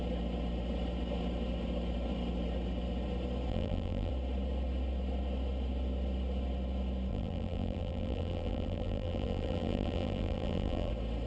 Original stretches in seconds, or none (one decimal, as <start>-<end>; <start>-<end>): 0.0-3.5; 4.1-7.1; 10.9-11.3